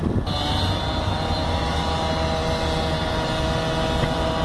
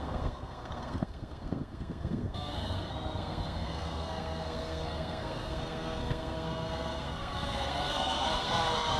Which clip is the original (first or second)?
first